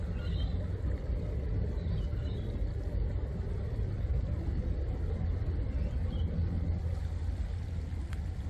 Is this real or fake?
real